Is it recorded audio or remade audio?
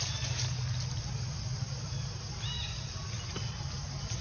recorded